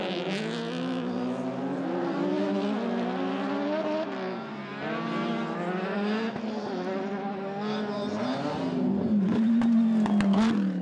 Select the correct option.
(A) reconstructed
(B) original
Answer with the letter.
B